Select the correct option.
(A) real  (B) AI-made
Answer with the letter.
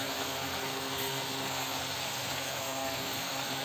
B